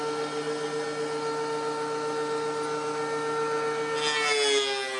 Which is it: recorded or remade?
recorded